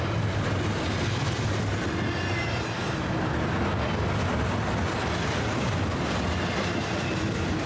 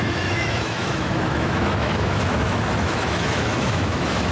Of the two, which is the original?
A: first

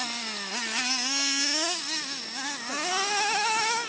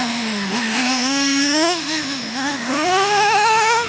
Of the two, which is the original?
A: first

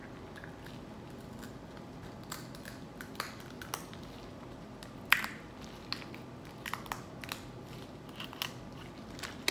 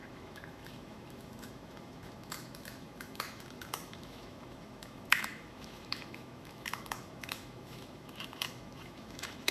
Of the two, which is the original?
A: first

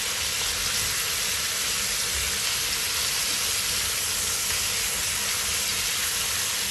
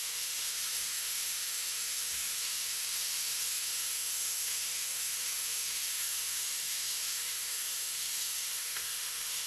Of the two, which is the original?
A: first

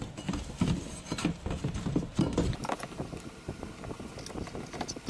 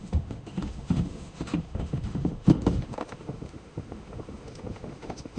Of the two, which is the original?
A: first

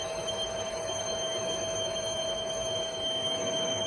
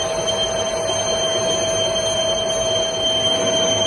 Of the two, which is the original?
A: second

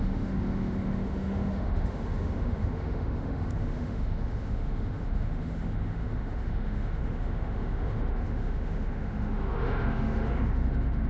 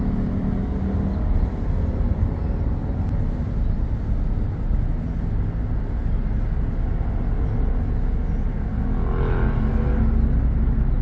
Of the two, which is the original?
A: second